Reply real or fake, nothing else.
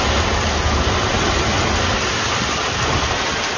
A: real